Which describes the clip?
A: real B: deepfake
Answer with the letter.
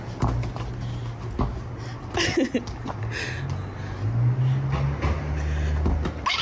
A